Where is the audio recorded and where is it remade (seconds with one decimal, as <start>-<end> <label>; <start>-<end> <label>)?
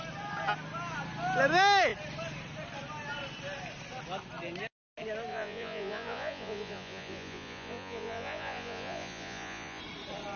0.0-5.3 recorded; 5.3-9.8 remade; 9.8-10.4 recorded